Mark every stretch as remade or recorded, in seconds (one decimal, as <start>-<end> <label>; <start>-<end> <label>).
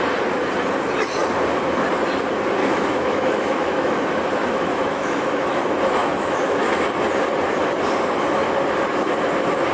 0.0-2.6 recorded; 2.6-3.9 remade; 3.9-4.4 recorded; 4.4-5.6 remade; 5.6-6.0 recorded; 6.0-6.6 remade; 6.6-9.7 recorded